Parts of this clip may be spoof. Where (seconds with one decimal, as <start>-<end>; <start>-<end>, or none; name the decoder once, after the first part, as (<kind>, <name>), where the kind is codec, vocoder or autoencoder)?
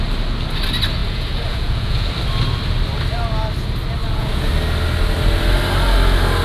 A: 1.0-2.1 (vocoder, Vocos); 4.0-4.5